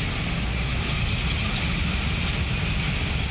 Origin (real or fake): real